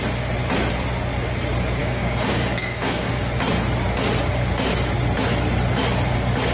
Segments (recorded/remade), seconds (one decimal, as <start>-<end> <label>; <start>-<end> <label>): 0.0-1.8 recorded; 1.8-3.1 remade; 3.1-6.5 recorded